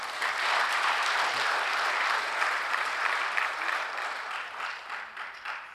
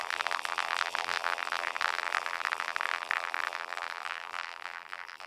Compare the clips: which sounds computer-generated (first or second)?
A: second